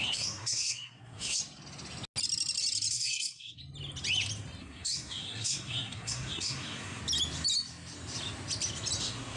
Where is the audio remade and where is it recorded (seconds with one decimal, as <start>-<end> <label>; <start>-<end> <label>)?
0.0-1.4 remade; 1.4-2.9 recorded; 2.9-3.6 remade; 3.6-4.6 recorded; 4.6-7.0 remade; 7.0-9.0 recorded; 9.0-9.4 remade